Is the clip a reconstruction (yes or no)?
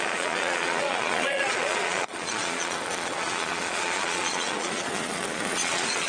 yes